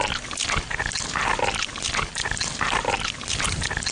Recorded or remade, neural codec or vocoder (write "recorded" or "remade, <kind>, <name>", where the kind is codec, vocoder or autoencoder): remade, vocoder, BigVGAN v2